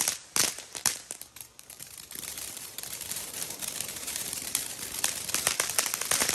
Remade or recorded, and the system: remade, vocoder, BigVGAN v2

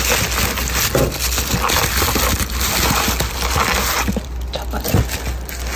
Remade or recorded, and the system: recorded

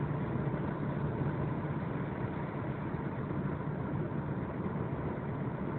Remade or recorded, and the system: recorded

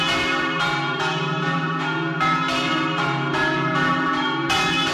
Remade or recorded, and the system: remade, vocoder, BigVGAN v2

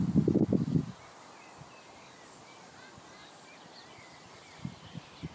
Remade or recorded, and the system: remade, vocoder, BigVGAN v2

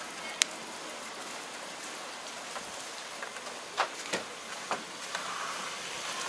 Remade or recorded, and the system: recorded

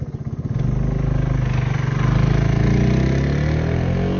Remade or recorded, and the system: recorded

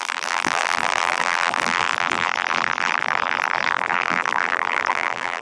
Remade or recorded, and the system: remade, vocoder, BigVGAN v2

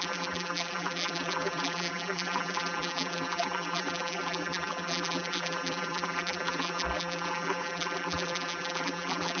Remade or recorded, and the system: remade, vocoder, BigVGAN v2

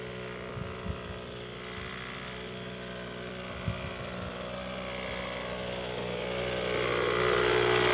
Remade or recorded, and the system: recorded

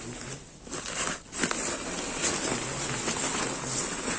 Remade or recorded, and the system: recorded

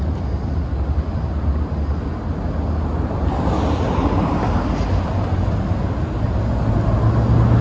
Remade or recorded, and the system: recorded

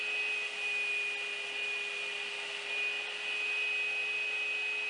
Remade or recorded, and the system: recorded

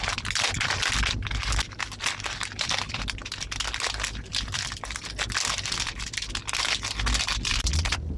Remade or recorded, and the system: recorded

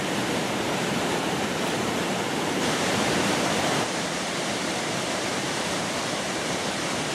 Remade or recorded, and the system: remade, vocoder, BigVGAN v2